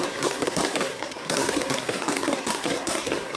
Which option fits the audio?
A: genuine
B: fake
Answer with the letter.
B